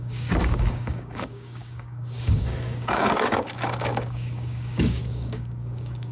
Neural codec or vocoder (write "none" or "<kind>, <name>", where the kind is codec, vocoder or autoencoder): codec, DAC